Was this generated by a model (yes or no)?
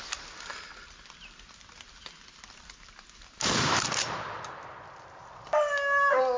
no